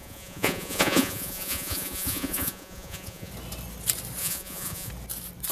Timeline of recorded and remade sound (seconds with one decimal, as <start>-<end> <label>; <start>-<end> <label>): 0.0-3.3 remade; 3.3-4.2 recorded; 4.2-4.9 remade; 4.9-5.5 recorded